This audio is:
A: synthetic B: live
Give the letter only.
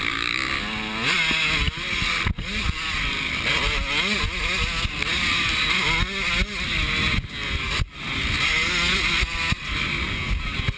B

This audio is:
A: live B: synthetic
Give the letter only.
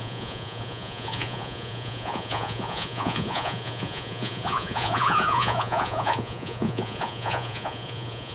B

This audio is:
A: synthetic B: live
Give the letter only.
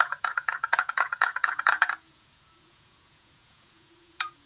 A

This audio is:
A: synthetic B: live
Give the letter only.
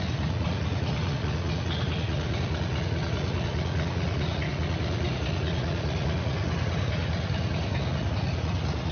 A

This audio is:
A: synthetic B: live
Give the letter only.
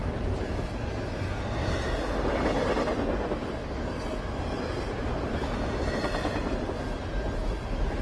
B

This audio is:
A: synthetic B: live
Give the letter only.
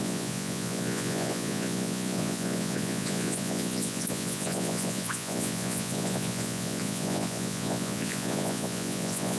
A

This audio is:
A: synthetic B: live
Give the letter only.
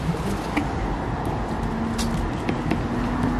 B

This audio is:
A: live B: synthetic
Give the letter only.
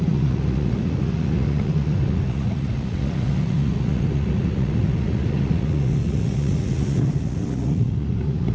B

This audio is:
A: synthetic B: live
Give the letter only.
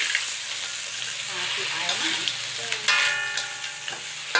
B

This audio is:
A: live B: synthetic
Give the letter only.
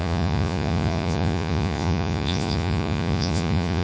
B